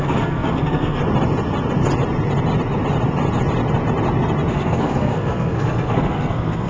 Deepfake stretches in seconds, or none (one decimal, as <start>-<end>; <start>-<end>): 0.0-1.0; 4.5-6.7